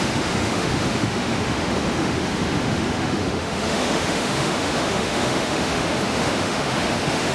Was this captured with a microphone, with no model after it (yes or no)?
no